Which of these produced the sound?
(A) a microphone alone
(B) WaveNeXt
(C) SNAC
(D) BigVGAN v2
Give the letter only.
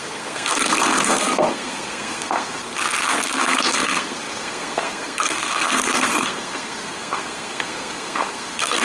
C